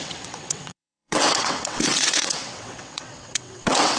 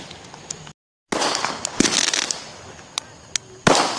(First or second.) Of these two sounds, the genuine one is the second